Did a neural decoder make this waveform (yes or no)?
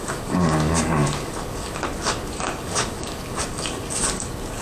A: yes